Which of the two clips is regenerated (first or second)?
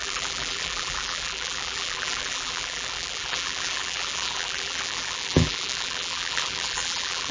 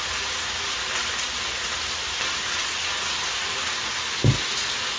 first